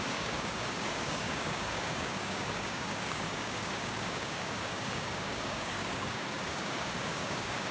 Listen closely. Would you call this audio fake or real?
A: fake